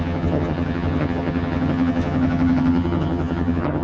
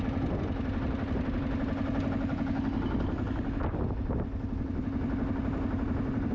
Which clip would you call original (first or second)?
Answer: second